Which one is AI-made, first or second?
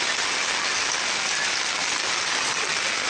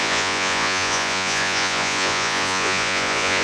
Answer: second